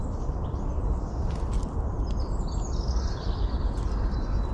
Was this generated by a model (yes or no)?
no